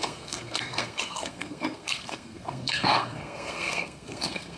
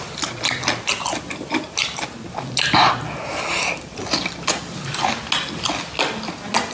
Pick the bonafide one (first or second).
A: second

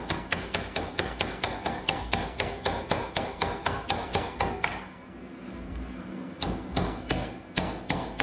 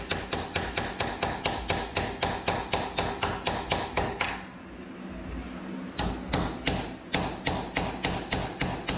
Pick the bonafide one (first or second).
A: second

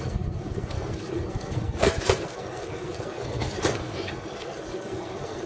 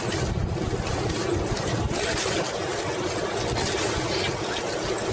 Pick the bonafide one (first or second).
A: second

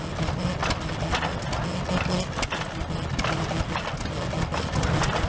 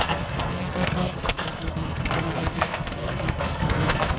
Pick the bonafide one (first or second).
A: first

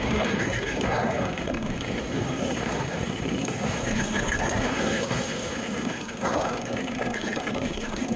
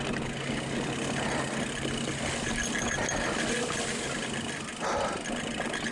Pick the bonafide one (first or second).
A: second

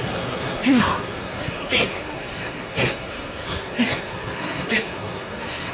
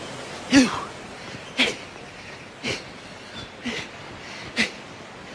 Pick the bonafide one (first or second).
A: second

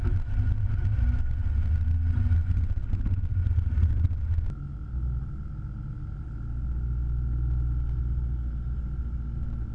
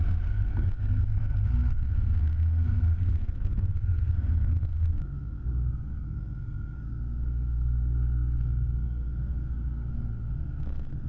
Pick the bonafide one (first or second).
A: first